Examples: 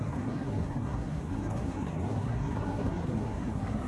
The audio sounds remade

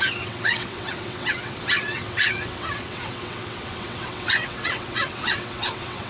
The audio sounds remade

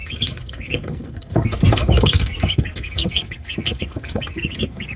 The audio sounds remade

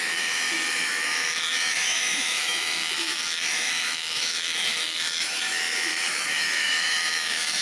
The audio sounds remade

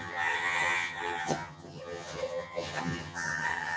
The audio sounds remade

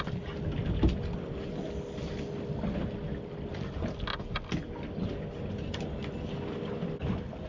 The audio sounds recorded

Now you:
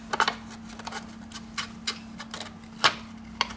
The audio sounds recorded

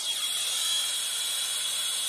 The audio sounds recorded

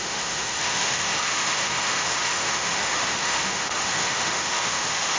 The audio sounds remade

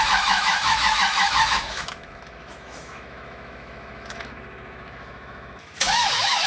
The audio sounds remade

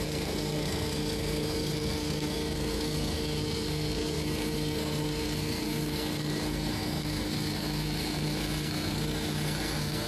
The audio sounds remade